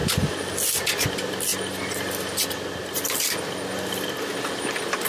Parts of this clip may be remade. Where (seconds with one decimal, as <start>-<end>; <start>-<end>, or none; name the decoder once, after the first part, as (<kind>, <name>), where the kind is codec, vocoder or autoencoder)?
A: none